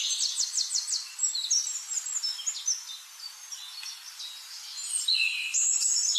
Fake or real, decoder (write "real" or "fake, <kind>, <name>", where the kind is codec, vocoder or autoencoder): real